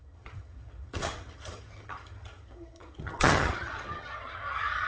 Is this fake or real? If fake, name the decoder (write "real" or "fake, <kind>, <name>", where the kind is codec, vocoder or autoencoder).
fake, vocoder, HiFi-GAN